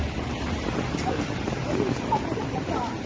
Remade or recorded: recorded